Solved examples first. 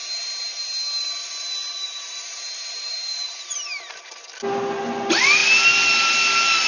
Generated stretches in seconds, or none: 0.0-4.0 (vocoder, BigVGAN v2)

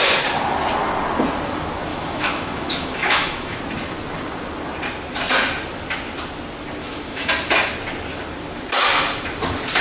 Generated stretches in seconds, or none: 1.9-3.6 (autoencoder, DAC-VAE); 6.8-7.3

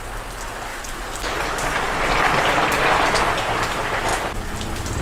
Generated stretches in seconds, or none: 0.7-3.2 (vocoder, BigVGAN v2)

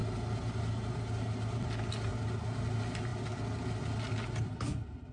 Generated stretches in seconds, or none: none

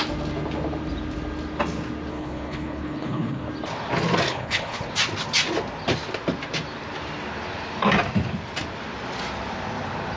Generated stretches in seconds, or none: 2.1-3.5 (codec, HILCodec); 4.3-4.9

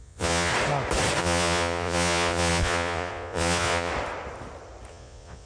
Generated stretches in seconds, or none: 0.0-0.5 (vocoder, Vocos); 1.2-3.9; 4.9-5.5

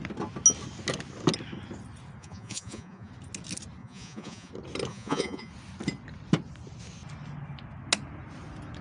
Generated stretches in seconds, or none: 2.2-3.1 (vocoder, Vocos); 3.8-4.5; 4.9-5.5

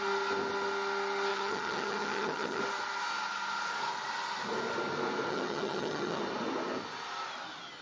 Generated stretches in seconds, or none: 1.3-2.6 (vocoder, HiFi-GAN); 5.3-6.2